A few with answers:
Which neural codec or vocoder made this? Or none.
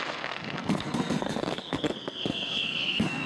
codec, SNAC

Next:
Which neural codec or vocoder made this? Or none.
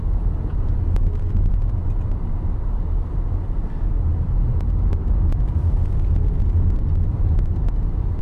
none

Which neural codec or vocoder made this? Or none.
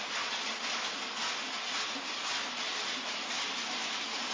none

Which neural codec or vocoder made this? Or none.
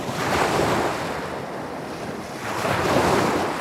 none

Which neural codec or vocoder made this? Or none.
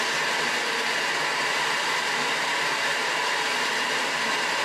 none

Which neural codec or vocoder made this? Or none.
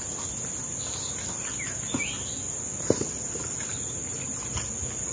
none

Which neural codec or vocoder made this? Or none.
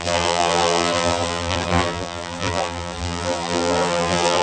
vocoder, BigVGAN v2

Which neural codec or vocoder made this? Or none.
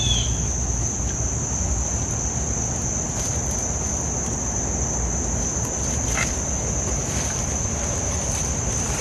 none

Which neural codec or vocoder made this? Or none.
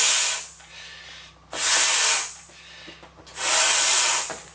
none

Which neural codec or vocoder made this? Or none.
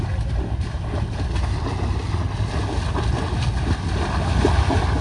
none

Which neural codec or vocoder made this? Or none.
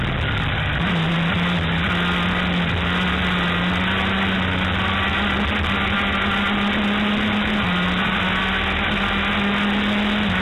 none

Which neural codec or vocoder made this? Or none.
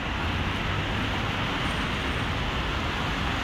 none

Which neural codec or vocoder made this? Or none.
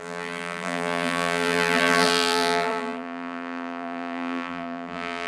vocoder, BigVGAN v2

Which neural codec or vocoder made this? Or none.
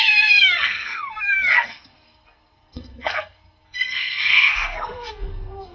codec, SNAC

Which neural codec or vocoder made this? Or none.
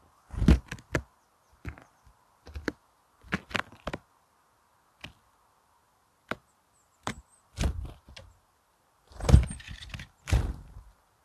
none